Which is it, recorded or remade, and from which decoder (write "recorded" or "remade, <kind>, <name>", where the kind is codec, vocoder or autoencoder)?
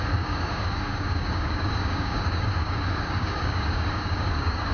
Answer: remade, codec, DAC